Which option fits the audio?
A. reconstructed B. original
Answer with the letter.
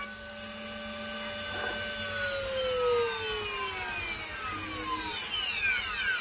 B